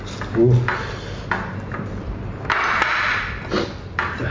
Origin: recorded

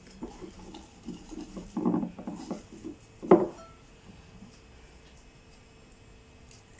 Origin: recorded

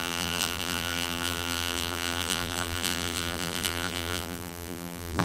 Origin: remade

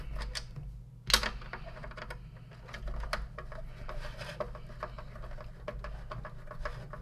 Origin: recorded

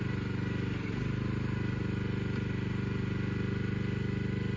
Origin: recorded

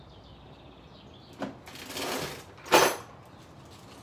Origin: recorded